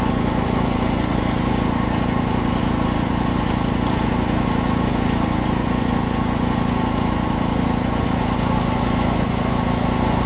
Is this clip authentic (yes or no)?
no